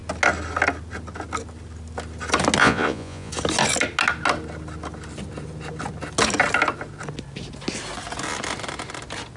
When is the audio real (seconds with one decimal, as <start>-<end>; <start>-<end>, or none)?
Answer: 0.0-2.6; 3.3-9.4